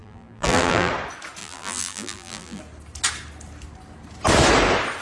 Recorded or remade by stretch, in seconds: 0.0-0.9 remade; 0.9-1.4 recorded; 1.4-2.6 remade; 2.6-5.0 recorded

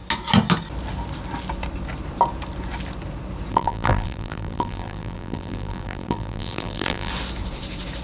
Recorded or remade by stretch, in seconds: 0.0-3.5 recorded; 3.5-7.1 remade; 7.1-8.0 recorded

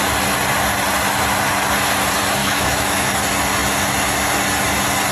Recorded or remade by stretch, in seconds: 0.0-2.4 recorded; 2.4-3.2 remade; 3.2-5.1 recorded

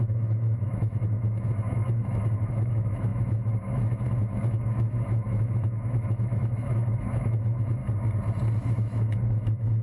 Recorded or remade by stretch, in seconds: 0.0-7.8 remade; 7.8-8.6 recorded; 8.6-9.8 remade